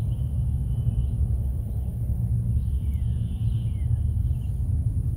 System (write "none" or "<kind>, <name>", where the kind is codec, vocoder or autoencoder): none